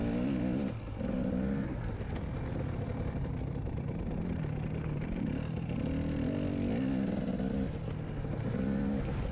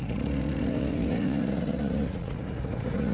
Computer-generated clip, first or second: second